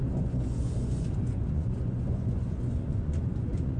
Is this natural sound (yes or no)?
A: no